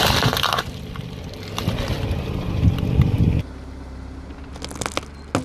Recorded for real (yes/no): yes